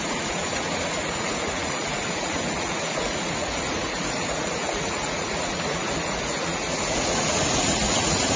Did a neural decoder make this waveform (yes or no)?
yes